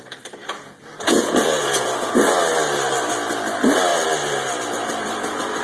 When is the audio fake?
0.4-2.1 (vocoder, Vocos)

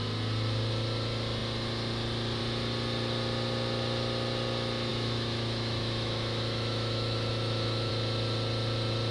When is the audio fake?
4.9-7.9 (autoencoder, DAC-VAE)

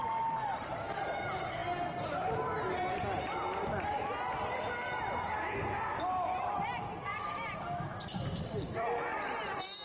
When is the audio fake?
7.1-7.6 (vocoder, BigVGAN v2)

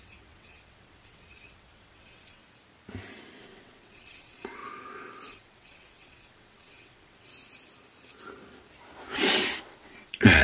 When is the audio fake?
0.0-2.4 (vocoder, WaveNeXt); 3.4-4.6; 5.3-7.3; 9.6-10.4

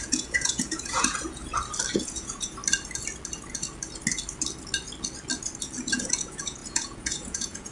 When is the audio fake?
0.0-1.4 (vocoder, Vocos); 1.9-2.6; 5.8-7.7

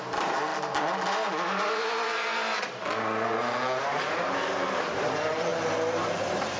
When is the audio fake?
0.0-0.5 (vocoder, BigVGAN v2); 3.8-5.5; 6.0-6.6

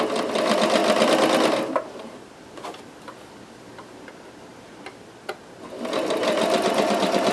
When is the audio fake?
0.0-0.8 (vocoder, BigVGAN v2); 2.0-7.3

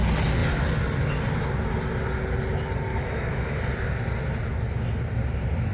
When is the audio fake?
2.9-3.6 (autoencoder, DAC-VAE)